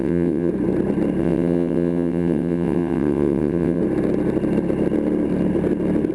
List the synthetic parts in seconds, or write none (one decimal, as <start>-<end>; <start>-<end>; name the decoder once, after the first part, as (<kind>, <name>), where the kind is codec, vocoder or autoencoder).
0.0-0.5 (vocoder, WaveNeXt); 1.2-3.8